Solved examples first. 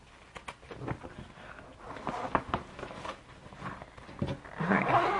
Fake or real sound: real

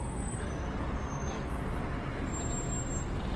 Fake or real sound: real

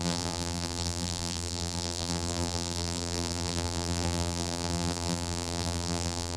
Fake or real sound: fake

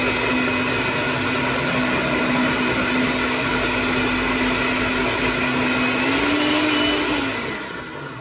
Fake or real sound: real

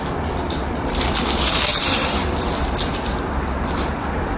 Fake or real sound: fake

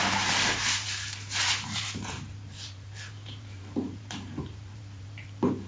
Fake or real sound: fake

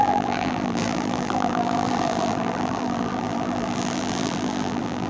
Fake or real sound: fake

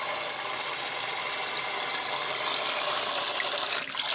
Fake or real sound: real